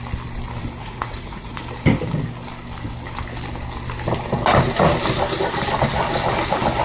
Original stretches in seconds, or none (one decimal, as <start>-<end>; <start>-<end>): 0.0-0.8; 1.6-6.8